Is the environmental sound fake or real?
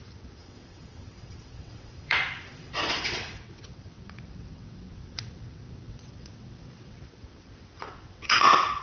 fake